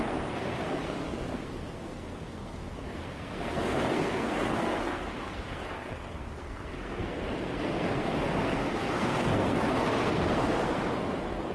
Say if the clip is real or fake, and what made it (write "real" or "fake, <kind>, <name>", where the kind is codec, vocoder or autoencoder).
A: fake, codec, SNAC